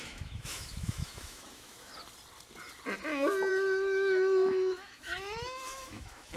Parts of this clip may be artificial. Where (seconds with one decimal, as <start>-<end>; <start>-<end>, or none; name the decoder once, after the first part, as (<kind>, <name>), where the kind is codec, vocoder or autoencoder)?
0.0-1.9 (autoencoder, DAC-VAE); 3.5-6.4